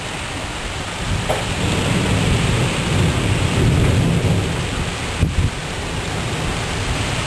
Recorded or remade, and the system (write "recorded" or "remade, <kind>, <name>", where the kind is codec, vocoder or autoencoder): recorded